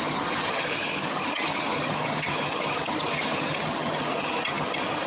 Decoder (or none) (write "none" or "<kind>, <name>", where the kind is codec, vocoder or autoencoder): vocoder, HiFi-GAN